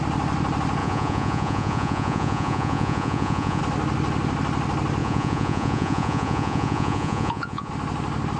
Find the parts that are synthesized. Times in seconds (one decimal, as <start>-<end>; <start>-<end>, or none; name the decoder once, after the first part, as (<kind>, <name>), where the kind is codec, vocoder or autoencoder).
0.8-3.6 (vocoder, Vocos); 5.0-7.7